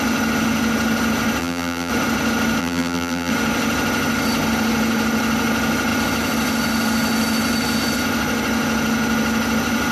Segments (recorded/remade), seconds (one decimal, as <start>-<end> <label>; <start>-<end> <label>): 0.0-1.4 recorded; 1.4-1.9 remade; 1.9-2.6 recorded; 2.6-3.3 remade; 3.3-9.9 recorded